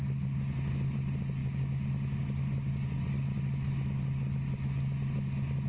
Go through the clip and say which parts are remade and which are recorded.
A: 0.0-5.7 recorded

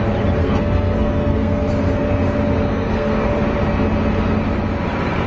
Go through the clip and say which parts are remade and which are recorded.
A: 0.0-0.4 recorded; 0.4-1.7 remade; 1.7-2.7 recorded; 2.7-3.3 remade; 3.3-5.3 recorded

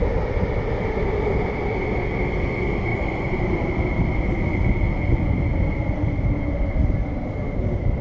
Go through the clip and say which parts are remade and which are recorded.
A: 0.0-2.9 recorded; 2.9-5.0 remade; 5.0-8.0 recorded

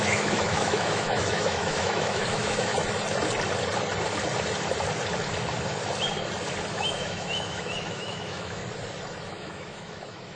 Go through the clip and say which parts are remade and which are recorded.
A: 0.0-2.7 remade; 2.7-6.7 recorded; 6.7-8.6 remade; 8.6-9.2 recorded; 9.2-10.4 remade

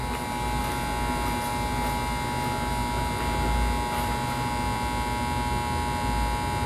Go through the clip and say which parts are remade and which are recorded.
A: 0.0-6.7 recorded

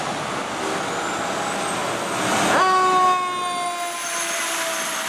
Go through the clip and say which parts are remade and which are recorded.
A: 0.0-5.1 recorded

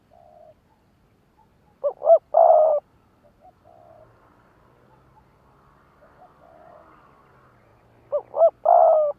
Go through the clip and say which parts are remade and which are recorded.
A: 0.0-9.2 recorded

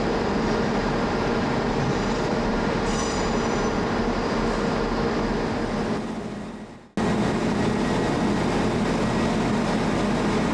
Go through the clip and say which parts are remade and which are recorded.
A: 0.0-0.8 recorded; 0.8-4.0 remade; 4.0-10.5 recorded